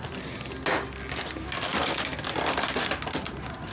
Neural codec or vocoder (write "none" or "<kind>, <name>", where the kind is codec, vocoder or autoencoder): none